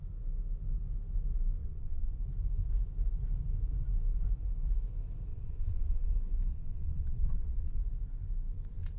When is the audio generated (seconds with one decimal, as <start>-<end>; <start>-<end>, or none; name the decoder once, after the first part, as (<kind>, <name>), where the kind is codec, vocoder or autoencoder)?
1.6-2.2 (vocoder, WaveNeXt); 5.3-6.1; 6.5-7.8